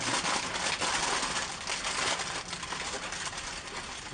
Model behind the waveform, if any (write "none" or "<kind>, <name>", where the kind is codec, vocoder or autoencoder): none